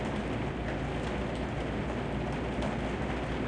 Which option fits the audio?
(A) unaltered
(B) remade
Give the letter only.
A